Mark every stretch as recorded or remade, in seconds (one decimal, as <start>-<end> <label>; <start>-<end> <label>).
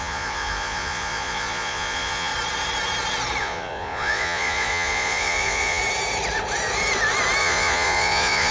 0.0-2.3 remade; 2.3-3.4 recorded; 3.4-5.8 remade; 5.8-7.4 recorded; 7.4-8.5 remade